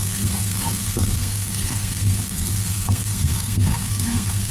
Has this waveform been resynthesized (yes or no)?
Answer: yes